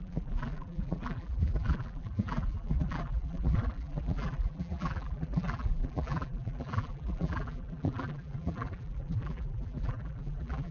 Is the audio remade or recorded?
remade